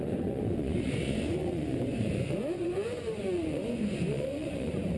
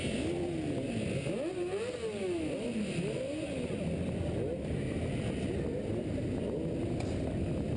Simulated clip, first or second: first